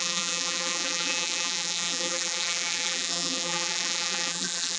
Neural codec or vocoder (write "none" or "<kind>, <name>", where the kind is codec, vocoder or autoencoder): vocoder, BigVGAN v2